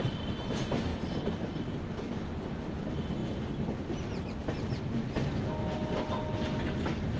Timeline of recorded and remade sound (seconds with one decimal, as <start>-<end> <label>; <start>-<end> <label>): 0.0-7.2 recorded